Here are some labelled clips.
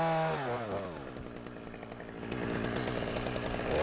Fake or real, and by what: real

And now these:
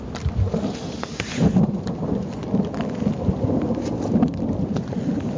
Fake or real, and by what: real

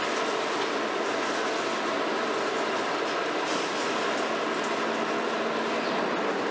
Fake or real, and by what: real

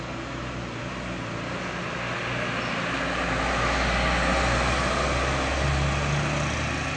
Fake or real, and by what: real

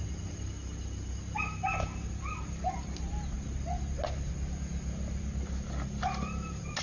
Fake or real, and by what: real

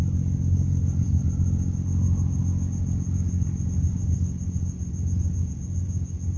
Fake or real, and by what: real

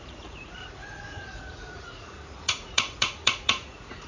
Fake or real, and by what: fake, vocoder, Vocos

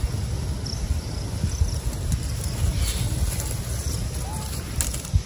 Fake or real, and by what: real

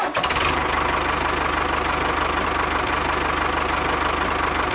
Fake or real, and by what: real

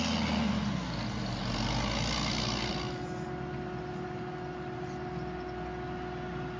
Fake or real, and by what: real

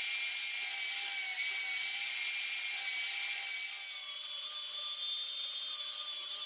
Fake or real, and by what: real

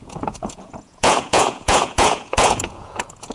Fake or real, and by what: fake, vocoder, Vocos